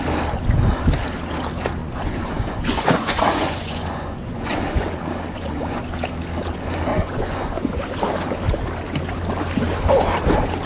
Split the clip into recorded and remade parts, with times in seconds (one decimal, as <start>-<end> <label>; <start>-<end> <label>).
0.0-1.8 recorded; 1.8-5.8 remade; 5.8-6.9 recorded; 6.9-7.8 remade; 7.8-10.7 recorded